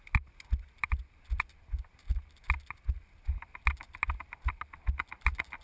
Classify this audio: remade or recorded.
recorded